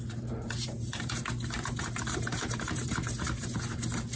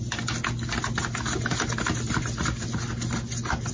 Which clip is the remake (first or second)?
first